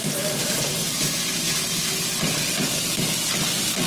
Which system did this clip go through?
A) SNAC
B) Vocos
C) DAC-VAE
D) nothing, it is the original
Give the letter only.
D